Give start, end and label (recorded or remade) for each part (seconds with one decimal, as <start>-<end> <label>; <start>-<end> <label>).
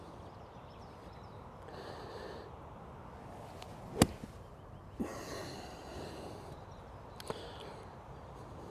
0.0-8.7 recorded